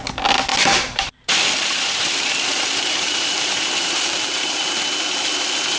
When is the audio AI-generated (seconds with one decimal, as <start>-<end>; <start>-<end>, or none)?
0.5-1.3; 2.5-4.6